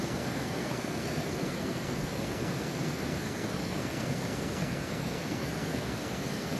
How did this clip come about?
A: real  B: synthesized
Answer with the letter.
B